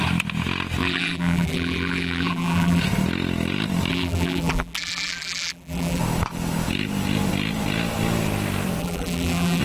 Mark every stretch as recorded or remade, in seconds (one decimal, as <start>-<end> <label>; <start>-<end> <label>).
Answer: 0.0-0.8 recorded; 0.8-2.8 remade; 2.8-3.9 recorded; 3.9-6.0 remade; 6.0-8.8 recorded; 8.8-9.6 remade